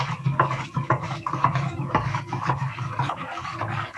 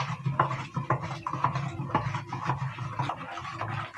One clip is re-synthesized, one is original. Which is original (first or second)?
second